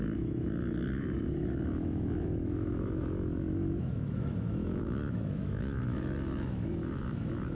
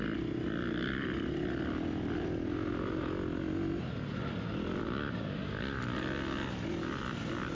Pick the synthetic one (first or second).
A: first